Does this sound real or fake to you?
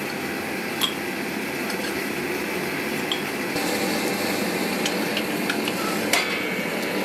real